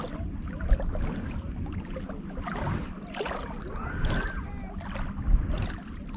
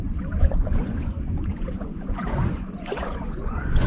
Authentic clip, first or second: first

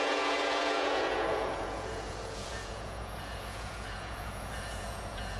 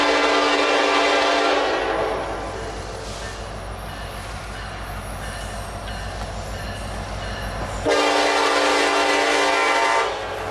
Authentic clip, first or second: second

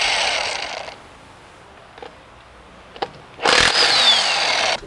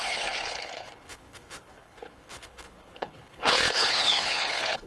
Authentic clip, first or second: first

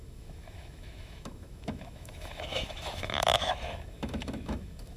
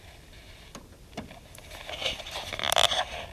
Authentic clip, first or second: second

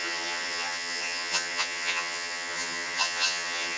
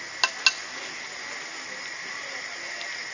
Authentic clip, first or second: second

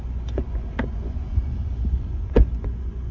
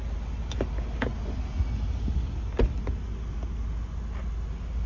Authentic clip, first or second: second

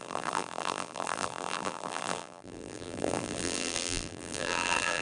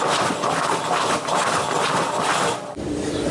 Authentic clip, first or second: second